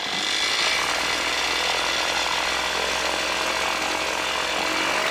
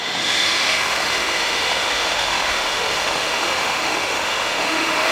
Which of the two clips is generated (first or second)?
second